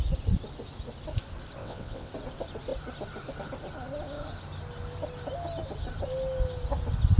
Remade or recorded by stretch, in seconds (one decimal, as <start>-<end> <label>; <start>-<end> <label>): 0.0-1.6 recorded; 1.6-2.1 remade; 2.1-7.2 recorded